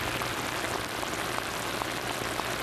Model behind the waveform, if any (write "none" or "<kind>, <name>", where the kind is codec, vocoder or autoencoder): none